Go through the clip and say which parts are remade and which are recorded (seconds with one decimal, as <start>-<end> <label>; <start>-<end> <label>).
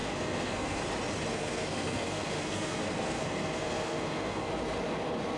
0.0-0.8 remade; 0.8-1.3 recorded; 1.3-4.5 remade; 4.5-5.4 recorded